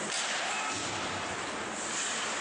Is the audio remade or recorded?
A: remade